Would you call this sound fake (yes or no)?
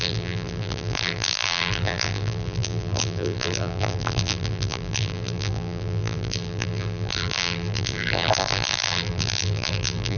yes